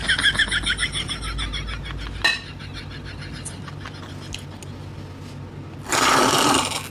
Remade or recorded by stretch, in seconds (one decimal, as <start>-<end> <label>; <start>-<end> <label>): 0.0-6.9 recorded